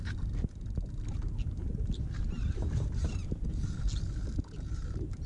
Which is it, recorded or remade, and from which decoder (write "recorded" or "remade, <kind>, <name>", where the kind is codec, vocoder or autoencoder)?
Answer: remade, vocoder, BigVGAN v2